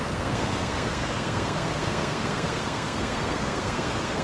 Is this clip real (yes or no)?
no